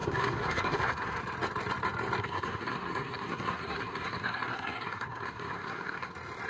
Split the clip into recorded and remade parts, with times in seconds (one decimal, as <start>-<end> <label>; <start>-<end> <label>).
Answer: 0.0-1.2 remade; 1.2-2.2 recorded; 2.2-6.1 remade; 6.1-6.5 recorded